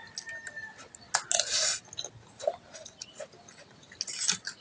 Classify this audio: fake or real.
real